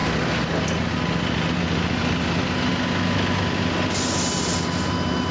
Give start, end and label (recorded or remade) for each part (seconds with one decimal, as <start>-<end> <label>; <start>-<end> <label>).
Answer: 0.0-5.3 recorded